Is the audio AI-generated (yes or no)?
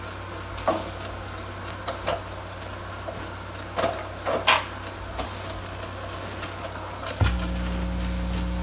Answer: no